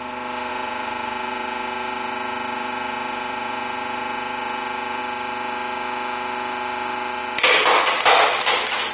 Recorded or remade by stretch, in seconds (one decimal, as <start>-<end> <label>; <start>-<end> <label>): 0.0-0.5 recorded; 0.5-5.0 remade; 5.0-8.9 recorded